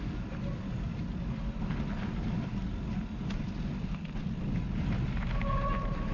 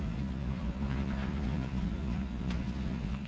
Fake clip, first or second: second